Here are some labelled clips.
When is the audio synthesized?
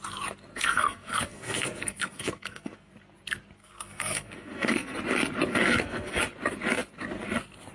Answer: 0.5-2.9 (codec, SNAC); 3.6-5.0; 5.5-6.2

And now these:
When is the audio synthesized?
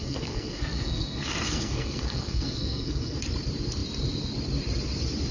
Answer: 0.0-3.2 (codec, SNAC)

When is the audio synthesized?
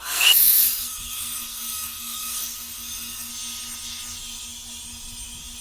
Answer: 0.0-3.3 (codec, SNAC)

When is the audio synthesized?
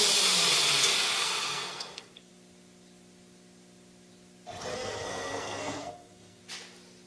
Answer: 1.2-2.3 (codec, SNAC); 4.7-6.4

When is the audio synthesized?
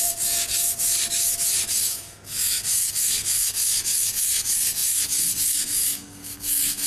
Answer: 0.0-0.9 (codec, SNAC); 1.7-6.9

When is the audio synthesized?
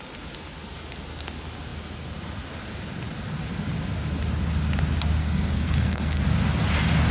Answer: 5.2-6.2 (codec, SNAC)